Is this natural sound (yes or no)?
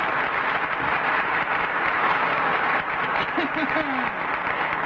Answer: yes